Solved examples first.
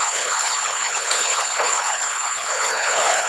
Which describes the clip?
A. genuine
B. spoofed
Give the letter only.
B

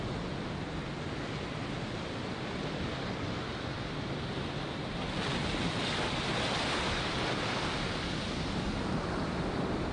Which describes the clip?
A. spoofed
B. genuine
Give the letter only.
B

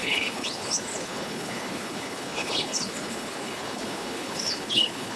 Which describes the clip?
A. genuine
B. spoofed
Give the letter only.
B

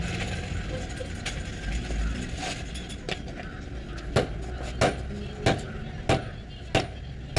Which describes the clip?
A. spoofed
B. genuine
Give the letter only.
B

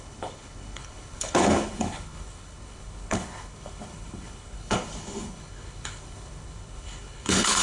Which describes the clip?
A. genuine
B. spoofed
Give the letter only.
B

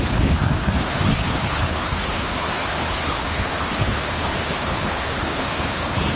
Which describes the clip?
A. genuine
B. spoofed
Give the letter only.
B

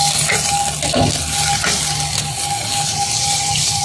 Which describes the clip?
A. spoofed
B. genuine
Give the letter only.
B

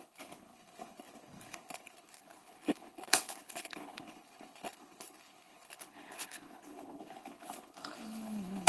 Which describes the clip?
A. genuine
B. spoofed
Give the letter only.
B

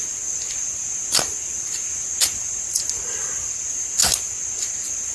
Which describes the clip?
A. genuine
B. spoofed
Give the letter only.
A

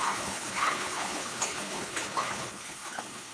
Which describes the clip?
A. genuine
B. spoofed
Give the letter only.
B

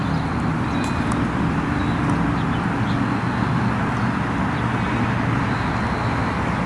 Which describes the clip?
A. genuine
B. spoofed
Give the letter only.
A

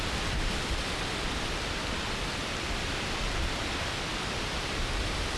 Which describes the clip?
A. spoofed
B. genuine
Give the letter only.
B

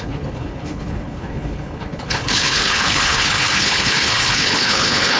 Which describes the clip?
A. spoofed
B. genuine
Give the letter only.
A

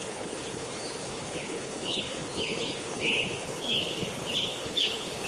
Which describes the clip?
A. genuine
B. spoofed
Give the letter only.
B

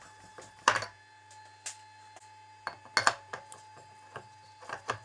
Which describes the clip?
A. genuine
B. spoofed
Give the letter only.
A